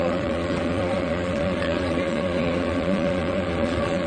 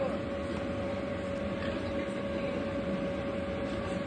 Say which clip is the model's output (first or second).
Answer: first